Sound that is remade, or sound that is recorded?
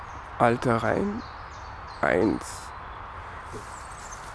recorded